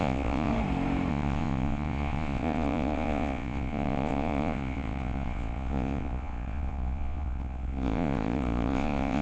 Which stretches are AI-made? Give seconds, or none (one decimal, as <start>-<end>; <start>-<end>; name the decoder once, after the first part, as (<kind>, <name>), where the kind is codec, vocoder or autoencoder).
0.0-0.5 (vocoder, Vocos); 1.1-9.2